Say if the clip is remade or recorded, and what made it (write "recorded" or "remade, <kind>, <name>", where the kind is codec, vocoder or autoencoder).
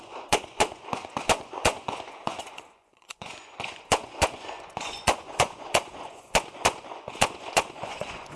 remade, vocoder, Vocos